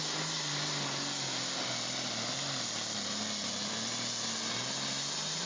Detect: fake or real real